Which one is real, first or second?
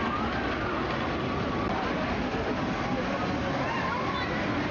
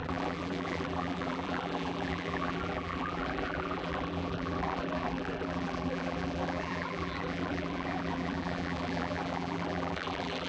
first